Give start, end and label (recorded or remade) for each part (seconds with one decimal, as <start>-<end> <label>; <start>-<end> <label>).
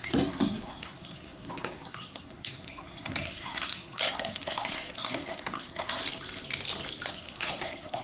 0.0-6.0 remade; 6.0-7.1 recorded; 7.1-8.0 remade